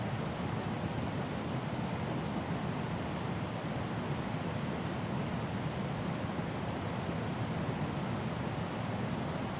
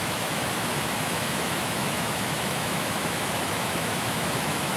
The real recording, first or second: first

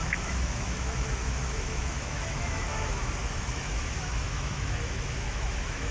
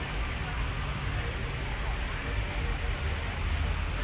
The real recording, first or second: second